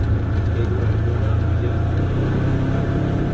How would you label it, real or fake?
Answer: real